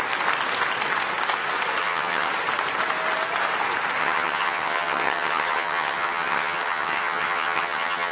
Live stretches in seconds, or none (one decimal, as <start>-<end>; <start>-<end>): 0.0-1.8; 2.3-4.0

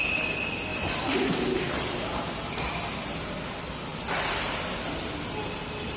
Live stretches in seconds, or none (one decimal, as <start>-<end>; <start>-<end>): 0.0-6.0

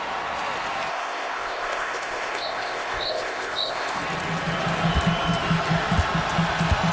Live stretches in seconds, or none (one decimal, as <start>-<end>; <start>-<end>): 0.0-0.9; 4.0-6.9

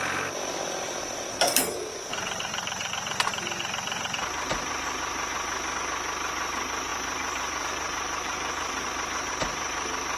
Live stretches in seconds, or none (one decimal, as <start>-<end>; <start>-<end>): 0.0-2.1; 2.9-6.9; 9.3-10.2

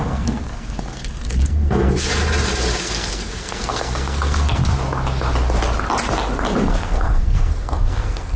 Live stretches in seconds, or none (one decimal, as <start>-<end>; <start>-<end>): 2.1-2.8; 4.6-6.6

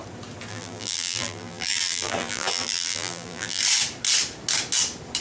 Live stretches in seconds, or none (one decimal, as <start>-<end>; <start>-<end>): 0.0-0.5; 3.6-5.2

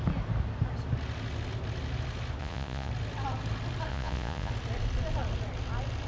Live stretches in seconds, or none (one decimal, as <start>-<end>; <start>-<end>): 0.0-2.4; 2.9-3.9; 4.5-6.1